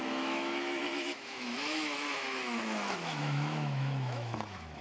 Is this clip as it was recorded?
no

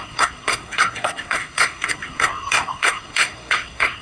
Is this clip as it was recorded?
no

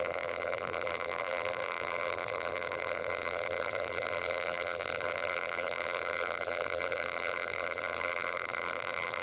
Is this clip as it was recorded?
no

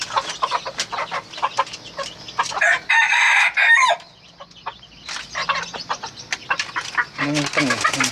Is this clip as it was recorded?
yes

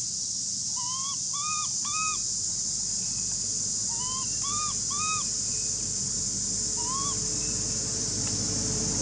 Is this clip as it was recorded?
yes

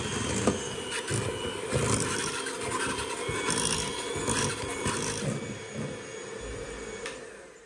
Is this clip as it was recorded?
yes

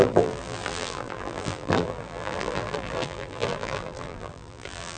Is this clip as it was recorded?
no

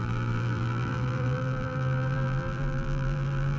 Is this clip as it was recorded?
no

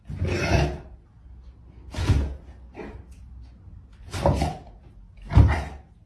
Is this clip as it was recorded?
yes